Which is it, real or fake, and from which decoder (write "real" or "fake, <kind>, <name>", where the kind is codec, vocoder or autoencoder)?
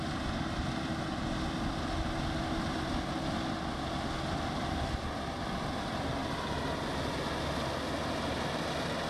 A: real